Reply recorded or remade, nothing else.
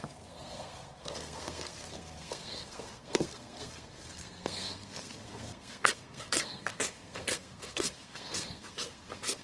remade